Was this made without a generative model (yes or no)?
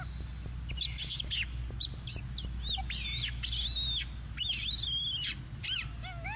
yes